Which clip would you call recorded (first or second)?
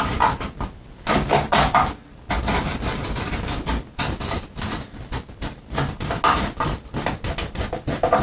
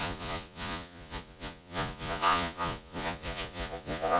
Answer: first